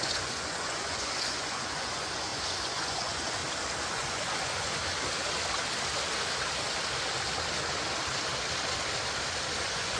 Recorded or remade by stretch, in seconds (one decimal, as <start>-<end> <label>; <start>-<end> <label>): 0.0-3.4 remade; 3.4-3.9 recorded; 3.9-4.8 remade; 4.8-9.6 recorded; 9.6-10.0 remade

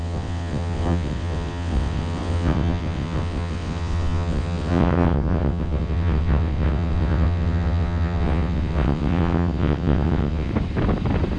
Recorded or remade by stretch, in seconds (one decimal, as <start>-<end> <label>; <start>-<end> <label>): 0.0-10.5 remade; 10.5-11.4 recorded

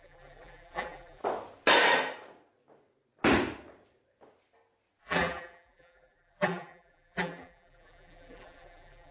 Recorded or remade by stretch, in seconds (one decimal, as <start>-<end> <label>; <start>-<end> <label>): 0.0-1.2 remade; 1.2-5.0 recorded; 5.0-9.1 remade